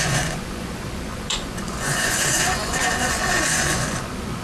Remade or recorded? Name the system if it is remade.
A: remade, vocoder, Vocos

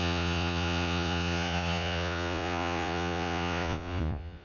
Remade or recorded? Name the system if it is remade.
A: remade, vocoder, Vocos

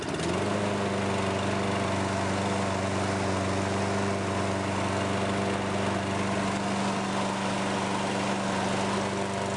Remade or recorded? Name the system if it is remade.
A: recorded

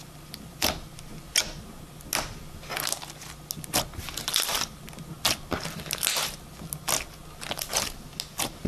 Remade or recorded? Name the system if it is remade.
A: recorded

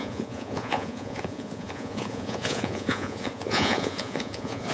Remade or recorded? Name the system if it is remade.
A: remade, vocoder, Vocos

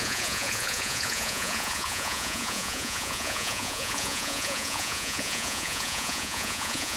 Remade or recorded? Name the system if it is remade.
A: remade, vocoder, Vocos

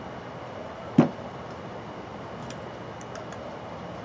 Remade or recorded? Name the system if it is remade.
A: recorded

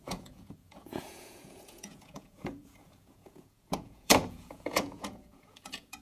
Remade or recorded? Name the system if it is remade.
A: remade, vocoder, Vocos